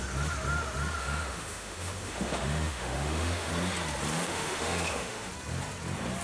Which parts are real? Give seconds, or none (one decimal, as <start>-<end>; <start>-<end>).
0.0-1.0; 3.5-4.1; 5.3-6.2